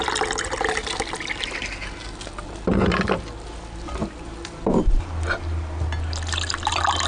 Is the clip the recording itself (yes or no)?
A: yes